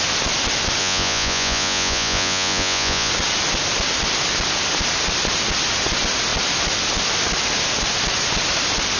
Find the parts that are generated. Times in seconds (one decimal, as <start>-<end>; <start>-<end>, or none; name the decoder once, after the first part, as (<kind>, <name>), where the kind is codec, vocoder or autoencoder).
0.8-3.1 (vocoder, Vocos)